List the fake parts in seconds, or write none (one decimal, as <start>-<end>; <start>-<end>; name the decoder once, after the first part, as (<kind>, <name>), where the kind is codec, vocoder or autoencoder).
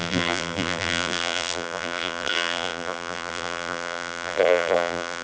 0.0-5.2 (vocoder, BigVGAN v2)